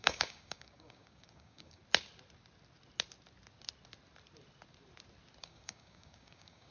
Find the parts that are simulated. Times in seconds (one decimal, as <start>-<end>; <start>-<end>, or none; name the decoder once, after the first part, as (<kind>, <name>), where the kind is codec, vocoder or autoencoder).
0.0-1.8 (codec, DAC); 5.4-6.7